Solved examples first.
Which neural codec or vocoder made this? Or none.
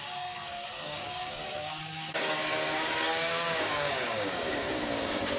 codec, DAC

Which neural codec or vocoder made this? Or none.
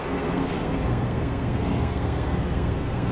codec, SNAC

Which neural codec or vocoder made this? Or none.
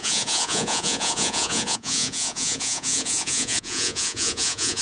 vocoder, Vocos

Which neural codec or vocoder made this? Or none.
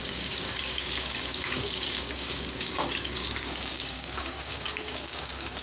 codec, DAC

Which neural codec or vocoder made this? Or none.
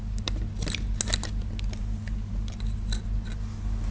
none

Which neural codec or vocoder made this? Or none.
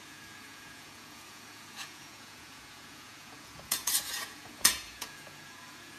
vocoder, Vocos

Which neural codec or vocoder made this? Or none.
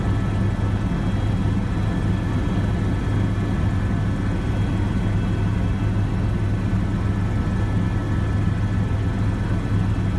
none